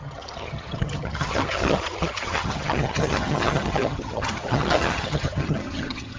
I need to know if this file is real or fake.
fake